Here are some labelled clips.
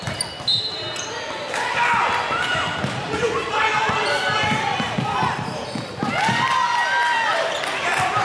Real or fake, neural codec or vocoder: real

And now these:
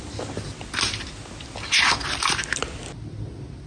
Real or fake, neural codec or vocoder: real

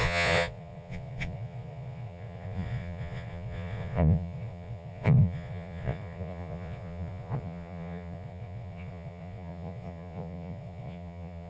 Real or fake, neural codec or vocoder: fake, vocoder, Vocos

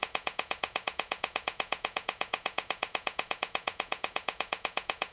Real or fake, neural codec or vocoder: fake, vocoder, Vocos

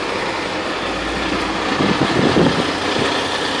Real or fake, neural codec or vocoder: real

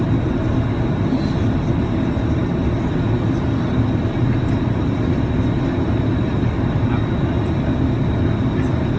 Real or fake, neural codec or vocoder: real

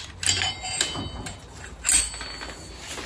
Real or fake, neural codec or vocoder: real